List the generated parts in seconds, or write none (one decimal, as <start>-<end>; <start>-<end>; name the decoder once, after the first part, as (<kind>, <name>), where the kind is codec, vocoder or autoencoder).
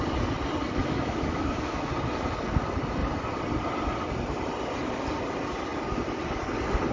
0.8-1.9 (autoencoder, DAC-VAE)